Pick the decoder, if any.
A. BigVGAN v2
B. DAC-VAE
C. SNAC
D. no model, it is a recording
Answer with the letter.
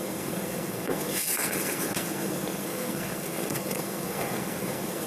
C